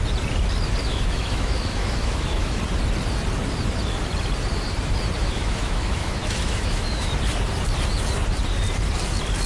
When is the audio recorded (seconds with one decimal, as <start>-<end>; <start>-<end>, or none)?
0.0-0.8; 2.6-5.2; 7.1-9.5